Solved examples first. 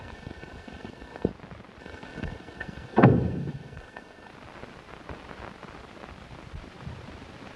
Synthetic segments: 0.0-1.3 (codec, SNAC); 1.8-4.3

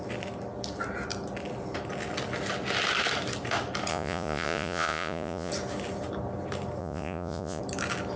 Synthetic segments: 3.9-5.5 (vocoder, Vocos); 6.8-7.6

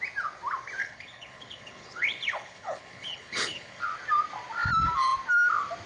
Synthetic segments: 0.8-3.8 (codec, HILCodec)

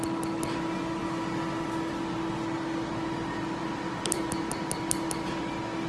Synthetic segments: none

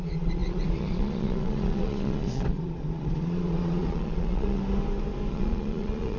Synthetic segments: 0.0-4.6 (vocoder, Vocos); 5.3-6.2